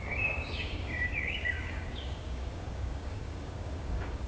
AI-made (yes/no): yes